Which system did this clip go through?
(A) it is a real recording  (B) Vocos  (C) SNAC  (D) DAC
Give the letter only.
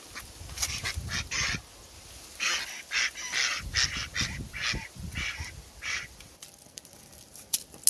A